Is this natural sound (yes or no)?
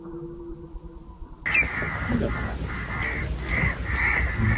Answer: yes